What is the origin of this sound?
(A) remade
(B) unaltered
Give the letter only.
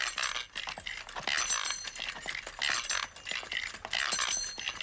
B